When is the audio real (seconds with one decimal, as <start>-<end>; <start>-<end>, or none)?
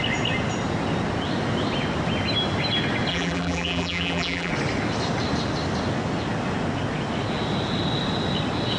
0.0-3.1; 4.5-8.8